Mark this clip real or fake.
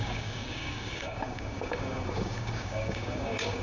fake